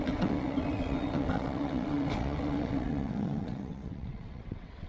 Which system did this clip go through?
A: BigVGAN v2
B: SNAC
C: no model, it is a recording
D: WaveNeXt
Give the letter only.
D